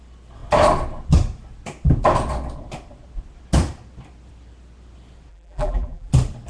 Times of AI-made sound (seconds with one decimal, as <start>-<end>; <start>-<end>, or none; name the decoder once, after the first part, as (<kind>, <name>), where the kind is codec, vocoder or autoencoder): 5.3-6.1 (vocoder, BigVGAN v2)